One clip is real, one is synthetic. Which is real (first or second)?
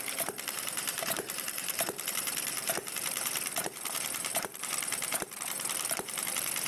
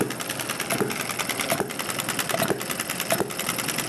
second